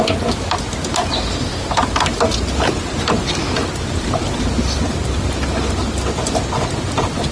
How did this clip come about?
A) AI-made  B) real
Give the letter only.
B